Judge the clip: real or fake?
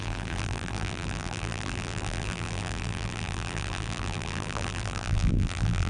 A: fake